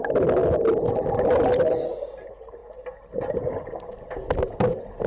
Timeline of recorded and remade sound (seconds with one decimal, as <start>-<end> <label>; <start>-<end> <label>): 0.0-5.1 recorded